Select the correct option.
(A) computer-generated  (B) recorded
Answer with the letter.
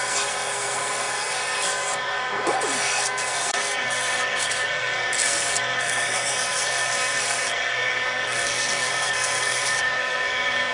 A